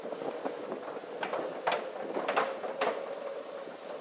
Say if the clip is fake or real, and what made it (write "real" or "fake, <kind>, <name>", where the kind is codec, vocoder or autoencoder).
real